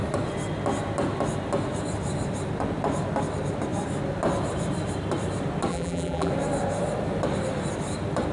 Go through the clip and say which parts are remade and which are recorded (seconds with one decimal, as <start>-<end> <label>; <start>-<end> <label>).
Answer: 0.0-5.7 recorded; 5.7-6.3 remade; 6.3-8.3 recorded